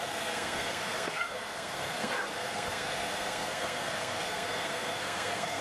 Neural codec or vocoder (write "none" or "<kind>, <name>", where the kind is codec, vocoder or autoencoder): codec, SNAC